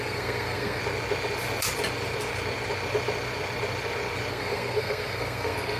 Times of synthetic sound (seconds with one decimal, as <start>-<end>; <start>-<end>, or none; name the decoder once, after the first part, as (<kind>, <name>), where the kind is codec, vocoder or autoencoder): 0.0-0.8 (codec, SNAC); 4.3-5.8